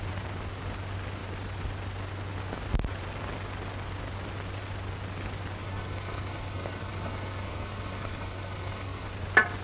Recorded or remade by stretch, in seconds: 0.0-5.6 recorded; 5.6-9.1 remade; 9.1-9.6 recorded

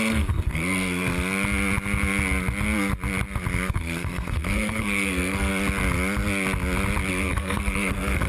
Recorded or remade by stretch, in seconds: 0.0-1.1 remade; 1.1-3.7 recorded; 3.7-5.5 remade; 5.5-7.1 recorded; 7.1-8.3 remade

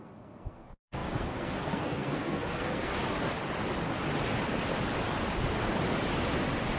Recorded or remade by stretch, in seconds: 0.0-2.9 remade; 2.9-6.8 recorded

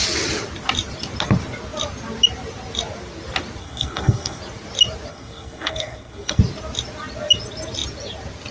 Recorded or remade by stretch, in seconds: 0.0-3.6 recorded; 3.6-4.4 remade; 4.4-5.1 recorded; 5.1-6.4 remade; 6.4-8.5 recorded

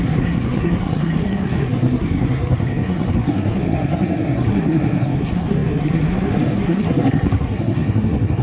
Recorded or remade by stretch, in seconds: 0.0-8.4 remade

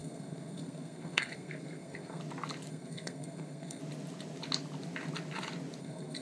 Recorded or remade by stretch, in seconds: 0.0-2.2 remade; 2.2-2.7 recorded; 2.7-3.8 remade; 3.8-5.8 recorded; 5.8-6.2 remade

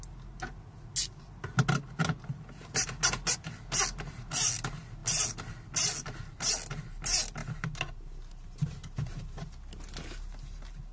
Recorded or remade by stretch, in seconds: 0.0-10.9 recorded